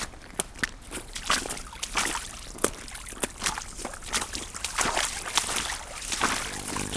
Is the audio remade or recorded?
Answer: recorded